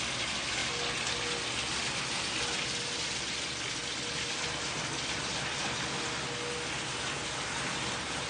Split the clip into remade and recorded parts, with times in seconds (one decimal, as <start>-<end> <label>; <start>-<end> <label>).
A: 0.0-8.3 recorded